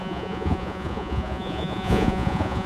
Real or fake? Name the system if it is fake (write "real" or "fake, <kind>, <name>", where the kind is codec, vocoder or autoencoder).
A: fake, vocoder, Vocos